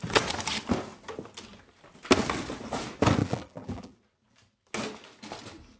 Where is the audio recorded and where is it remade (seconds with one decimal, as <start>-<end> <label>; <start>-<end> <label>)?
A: 0.0-3.2 recorded; 3.2-3.9 remade; 3.9-5.8 recorded